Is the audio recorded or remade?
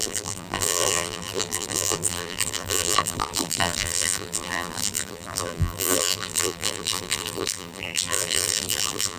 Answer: remade